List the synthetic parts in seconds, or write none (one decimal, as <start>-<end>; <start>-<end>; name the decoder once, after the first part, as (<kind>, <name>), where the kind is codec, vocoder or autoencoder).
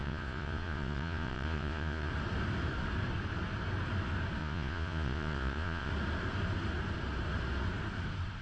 0.0-2.1 (vocoder, Vocos); 4.4-5.9